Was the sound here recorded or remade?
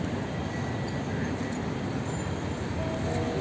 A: recorded